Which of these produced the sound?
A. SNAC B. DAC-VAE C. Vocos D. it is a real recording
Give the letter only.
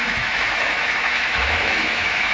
B